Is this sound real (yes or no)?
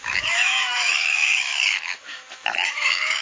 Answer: no